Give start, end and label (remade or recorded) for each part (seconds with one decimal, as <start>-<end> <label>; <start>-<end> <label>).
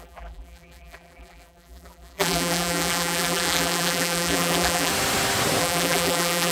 0.0-4.9 remade; 4.9-5.6 recorded; 5.6-6.5 remade